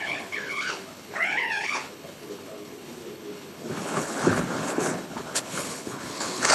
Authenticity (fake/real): fake